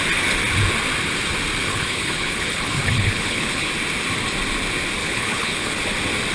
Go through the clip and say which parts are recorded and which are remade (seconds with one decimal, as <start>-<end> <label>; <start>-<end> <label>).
0.0-1.7 recorded; 1.7-3.7 remade; 3.7-5.0 recorded; 5.0-5.8 remade; 5.8-6.3 recorded

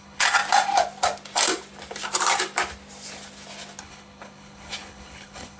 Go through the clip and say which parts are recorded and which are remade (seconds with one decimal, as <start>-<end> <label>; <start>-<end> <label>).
0.0-0.4 remade; 0.4-3.8 recorded; 3.8-5.6 remade

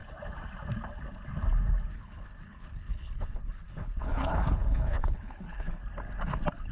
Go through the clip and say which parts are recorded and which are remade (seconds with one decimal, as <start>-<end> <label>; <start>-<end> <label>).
0.0-1.9 recorded; 1.9-5.8 remade; 5.8-6.7 recorded

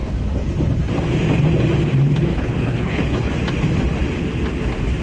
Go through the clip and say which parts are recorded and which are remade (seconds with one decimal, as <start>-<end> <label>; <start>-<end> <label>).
0.0-2.3 recorded; 2.3-3.3 remade; 3.3-5.0 recorded

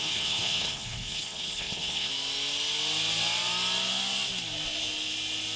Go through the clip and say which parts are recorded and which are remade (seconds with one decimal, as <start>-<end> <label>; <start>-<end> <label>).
0.0-2.1 remade; 2.1-5.6 recorded

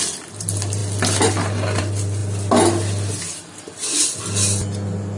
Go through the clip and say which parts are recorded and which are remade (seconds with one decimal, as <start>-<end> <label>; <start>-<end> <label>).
0.0-5.2 recorded